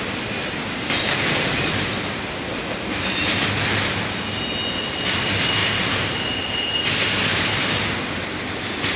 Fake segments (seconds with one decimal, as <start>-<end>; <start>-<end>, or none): 0.6-2.2; 5.6-6.2; 7.3-7.8